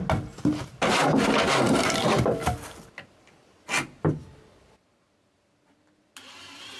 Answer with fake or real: real